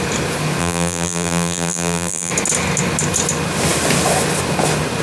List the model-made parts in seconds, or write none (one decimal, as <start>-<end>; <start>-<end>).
0.6-2.3